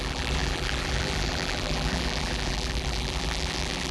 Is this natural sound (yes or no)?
no